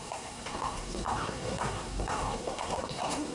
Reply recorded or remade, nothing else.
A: remade